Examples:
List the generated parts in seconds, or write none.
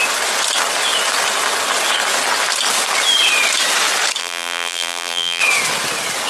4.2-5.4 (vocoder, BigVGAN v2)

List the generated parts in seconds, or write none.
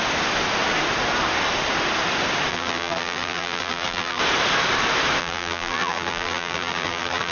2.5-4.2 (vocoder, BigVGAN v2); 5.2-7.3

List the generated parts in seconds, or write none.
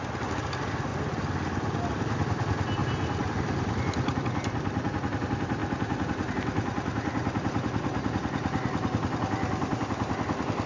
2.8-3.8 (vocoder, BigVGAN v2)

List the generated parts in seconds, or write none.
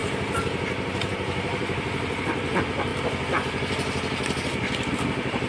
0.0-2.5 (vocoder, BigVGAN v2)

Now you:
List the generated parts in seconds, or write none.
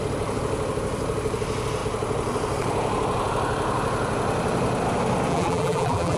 5.3-6.2 (vocoder, BigVGAN v2)